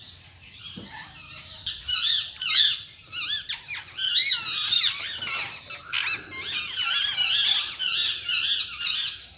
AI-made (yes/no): no